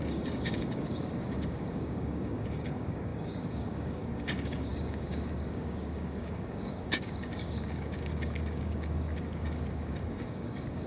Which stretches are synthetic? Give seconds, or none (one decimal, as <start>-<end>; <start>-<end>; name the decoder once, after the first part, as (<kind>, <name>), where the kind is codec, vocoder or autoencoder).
0.0-10.9 (codec, DAC)